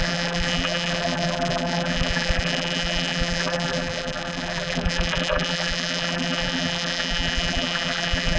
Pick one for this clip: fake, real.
fake